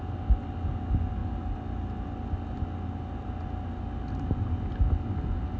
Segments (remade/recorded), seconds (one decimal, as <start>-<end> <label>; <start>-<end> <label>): 0.0-5.6 recorded